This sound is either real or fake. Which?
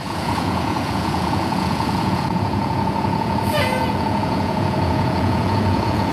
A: fake